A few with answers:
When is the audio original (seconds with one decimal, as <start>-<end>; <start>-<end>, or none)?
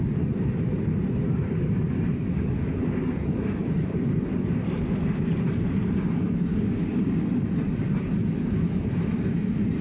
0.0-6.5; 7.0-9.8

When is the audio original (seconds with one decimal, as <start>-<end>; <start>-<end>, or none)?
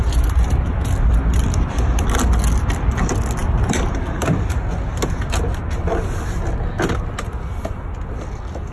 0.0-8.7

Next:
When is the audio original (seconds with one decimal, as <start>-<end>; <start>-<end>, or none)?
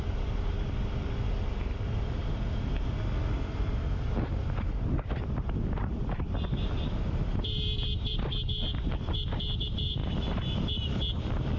10.0-11.6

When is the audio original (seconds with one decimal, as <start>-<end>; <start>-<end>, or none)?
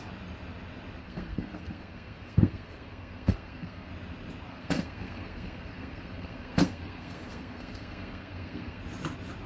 0.0-1.0; 3.9-4.5; 8.8-9.5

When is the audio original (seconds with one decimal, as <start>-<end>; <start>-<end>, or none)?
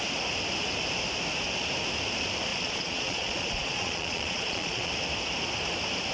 0.0-2.5; 4.9-6.1